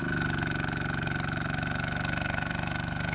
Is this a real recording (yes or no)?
no